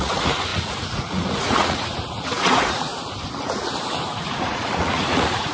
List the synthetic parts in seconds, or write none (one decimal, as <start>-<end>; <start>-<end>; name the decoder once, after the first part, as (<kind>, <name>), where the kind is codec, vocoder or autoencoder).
0.0-2.9 (vocoder, Vocos); 4.2-5.5